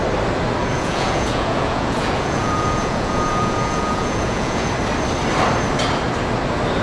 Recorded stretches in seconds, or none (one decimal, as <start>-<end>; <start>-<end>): 0.0-0.6; 4.7-6.8